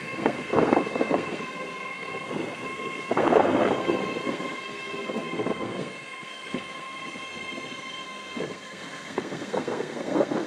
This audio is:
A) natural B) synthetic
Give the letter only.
B